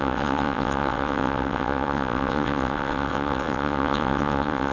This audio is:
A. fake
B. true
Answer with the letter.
A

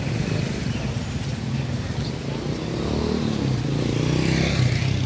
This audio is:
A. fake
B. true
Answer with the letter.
B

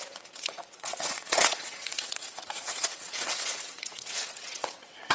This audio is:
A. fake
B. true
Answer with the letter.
A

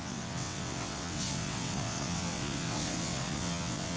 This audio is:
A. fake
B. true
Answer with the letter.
A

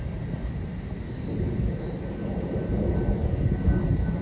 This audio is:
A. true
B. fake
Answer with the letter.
A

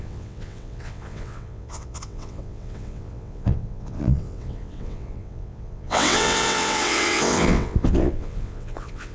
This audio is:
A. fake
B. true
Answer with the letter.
A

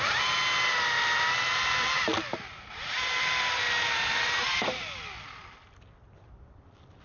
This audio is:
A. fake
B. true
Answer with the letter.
B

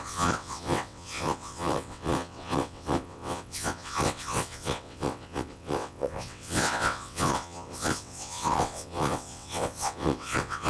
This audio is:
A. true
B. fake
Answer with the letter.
B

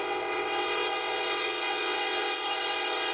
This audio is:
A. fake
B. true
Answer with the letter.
A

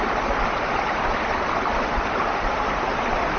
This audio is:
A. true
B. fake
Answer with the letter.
A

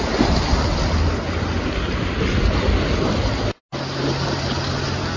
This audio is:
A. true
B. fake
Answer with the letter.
A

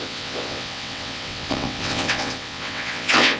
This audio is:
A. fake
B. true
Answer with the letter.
A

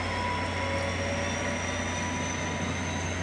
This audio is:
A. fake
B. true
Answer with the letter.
B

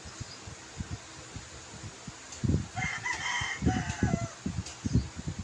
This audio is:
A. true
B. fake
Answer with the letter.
A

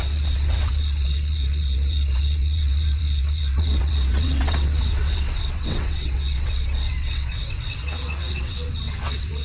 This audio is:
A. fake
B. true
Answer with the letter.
A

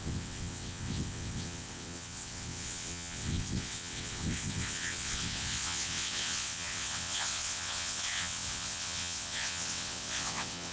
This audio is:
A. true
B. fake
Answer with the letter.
B